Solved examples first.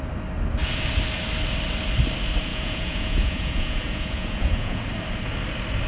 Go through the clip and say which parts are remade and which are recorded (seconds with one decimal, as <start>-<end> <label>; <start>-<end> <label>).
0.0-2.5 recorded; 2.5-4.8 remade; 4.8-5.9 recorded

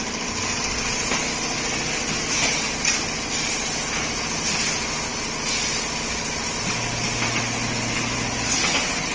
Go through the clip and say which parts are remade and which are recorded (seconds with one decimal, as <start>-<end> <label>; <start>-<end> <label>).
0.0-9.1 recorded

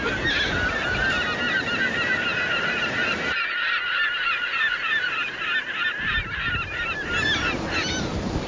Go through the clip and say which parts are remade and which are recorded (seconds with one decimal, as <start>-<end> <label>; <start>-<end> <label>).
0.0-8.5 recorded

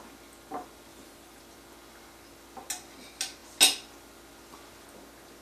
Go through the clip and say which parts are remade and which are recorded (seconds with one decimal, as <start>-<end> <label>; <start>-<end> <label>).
0.0-0.9 recorded; 0.9-1.4 remade; 1.4-5.4 recorded

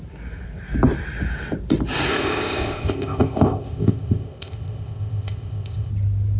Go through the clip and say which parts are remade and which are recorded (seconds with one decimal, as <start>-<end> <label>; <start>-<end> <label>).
0.0-2.1 recorded; 2.1-5.9 remade; 5.9-6.4 recorded

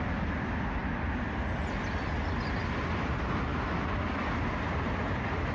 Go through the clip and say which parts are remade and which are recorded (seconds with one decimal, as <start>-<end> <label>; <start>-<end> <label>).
0.0-5.5 recorded

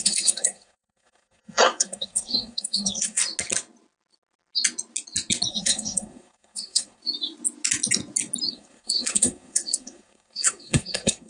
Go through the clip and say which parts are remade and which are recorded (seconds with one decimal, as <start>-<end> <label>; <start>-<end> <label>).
0.0-3.2 remade; 3.2-5.5 recorded; 5.5-7.0 remade; 7.0-8.5 recorded; 8.5-11.3 remade

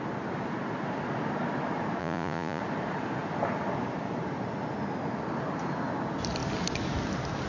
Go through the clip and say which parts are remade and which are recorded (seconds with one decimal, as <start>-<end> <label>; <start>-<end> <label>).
0.0-2.0 recorded; 2.0-2.6 remade; 2.6-7.5 recorded